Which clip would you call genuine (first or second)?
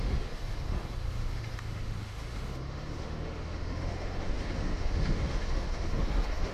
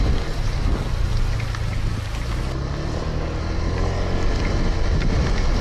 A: second